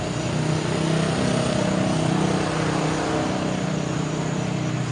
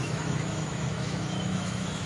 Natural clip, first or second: first